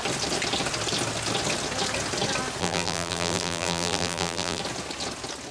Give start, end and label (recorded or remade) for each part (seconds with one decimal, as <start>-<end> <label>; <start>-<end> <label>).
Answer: 0.0-2.6 recorded; 2.6-4.6 remade; 4.6-5.5 recorded